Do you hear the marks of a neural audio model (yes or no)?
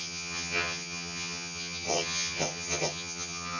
yes